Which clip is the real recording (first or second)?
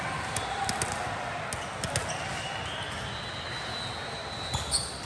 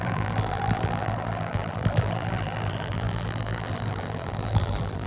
first